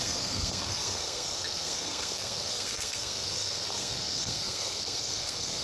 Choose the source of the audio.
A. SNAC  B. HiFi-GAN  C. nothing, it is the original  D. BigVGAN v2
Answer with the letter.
A